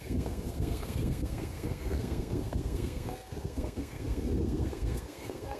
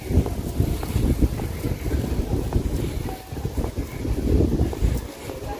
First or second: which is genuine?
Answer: second